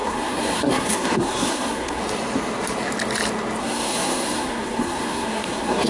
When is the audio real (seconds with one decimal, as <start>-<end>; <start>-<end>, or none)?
2.0-3.6